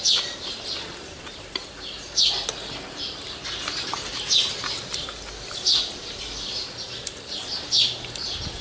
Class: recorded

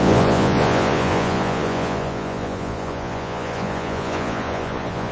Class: remade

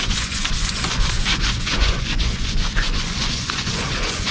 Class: remade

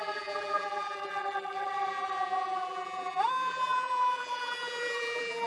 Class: remade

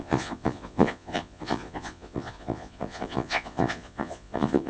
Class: remade